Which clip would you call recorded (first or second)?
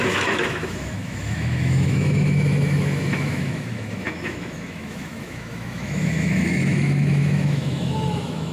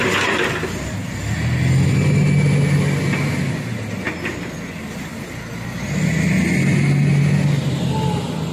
second